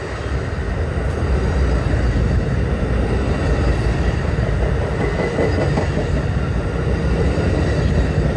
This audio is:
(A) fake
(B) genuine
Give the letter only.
B